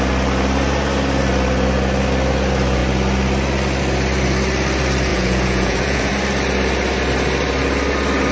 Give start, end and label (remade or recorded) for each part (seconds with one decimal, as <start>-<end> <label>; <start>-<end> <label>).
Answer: 0.0-5.1 recorded; 5.1-6.1 remade; 6.1-8.3 recorded